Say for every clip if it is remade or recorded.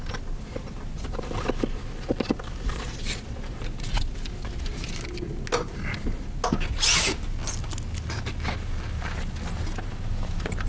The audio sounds recorded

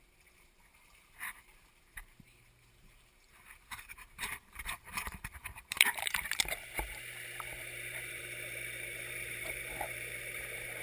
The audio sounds remade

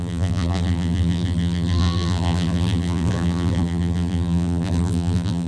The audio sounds remade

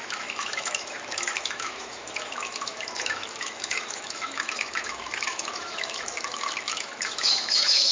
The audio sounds remade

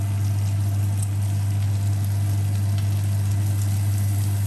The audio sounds recorded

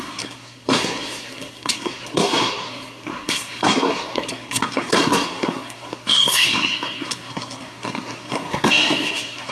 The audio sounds remade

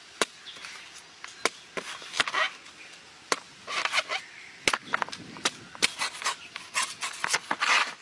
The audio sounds recorded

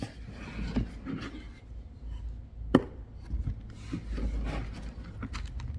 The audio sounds recorded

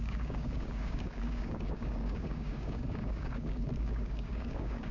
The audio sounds remade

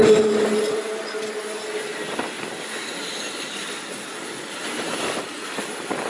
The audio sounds recorded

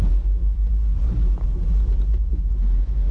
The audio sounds recorded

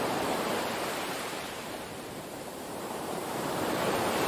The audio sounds remade